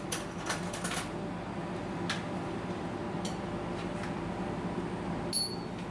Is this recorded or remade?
recorded